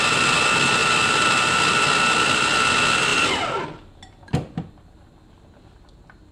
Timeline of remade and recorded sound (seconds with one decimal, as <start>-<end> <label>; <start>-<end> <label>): 0.0-6.3 recorded